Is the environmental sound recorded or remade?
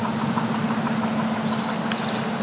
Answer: recorded